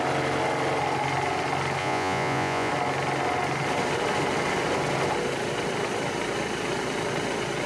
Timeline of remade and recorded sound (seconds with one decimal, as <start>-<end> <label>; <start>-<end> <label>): 0.0-1.8 recorded; 1.8-2.7 remade; 2.7-7.7 recorded